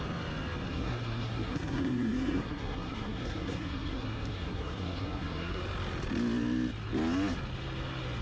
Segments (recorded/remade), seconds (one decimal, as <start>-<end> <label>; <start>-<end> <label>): 0.0-0.7 recorded; 0.7-5.6 remade; 5.6-8.2 recorded